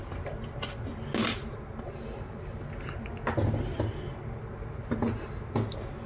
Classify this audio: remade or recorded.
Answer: recorded